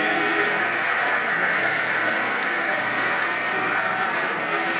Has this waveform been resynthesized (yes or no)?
yes